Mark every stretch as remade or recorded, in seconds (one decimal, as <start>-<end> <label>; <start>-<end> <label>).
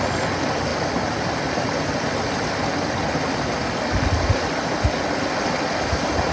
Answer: 0.0-6.3 recorded